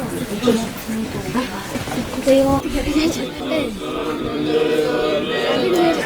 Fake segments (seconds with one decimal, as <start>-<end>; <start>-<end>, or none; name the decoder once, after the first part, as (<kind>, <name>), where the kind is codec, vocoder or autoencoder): 2.5-3.1 (vocoder, BigVGAN v2); 4.0-6.1